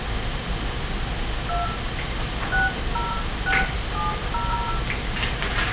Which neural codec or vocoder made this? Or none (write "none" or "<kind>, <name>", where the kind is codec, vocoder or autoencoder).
none